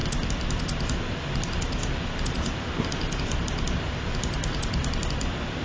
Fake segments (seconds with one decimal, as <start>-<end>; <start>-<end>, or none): none